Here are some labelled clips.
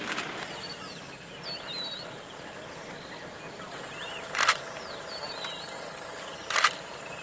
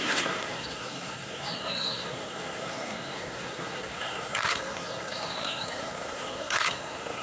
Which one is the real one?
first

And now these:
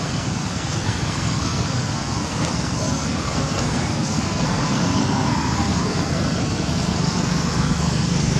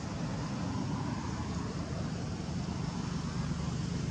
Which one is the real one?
second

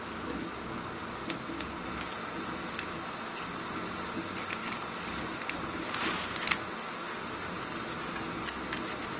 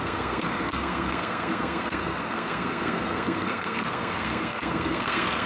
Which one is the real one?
first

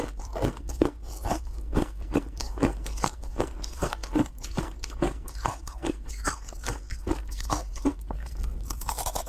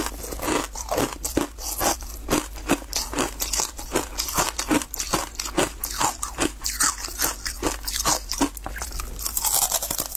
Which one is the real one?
second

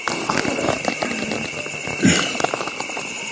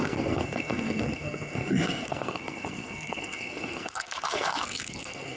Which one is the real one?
first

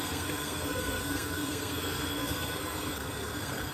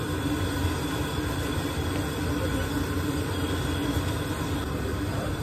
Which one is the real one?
second